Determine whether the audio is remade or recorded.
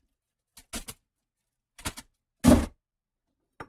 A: recorded